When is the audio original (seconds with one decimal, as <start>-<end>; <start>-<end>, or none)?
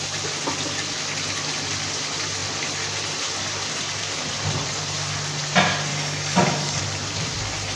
0.0-5.9; 6.8-7.8